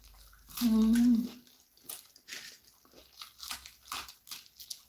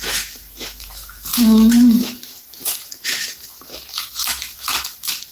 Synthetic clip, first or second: second